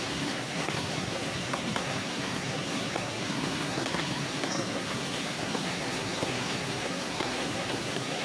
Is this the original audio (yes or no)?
no